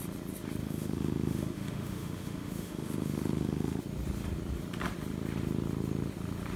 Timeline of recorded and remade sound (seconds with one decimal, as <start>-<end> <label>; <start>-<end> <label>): 0.0-0.6 recorded; 0.6-3.8 remade; 3.8-6.6 recorded